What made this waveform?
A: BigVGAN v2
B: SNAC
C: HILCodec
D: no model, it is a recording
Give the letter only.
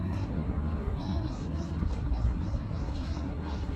B